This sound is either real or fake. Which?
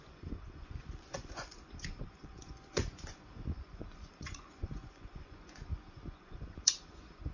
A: fake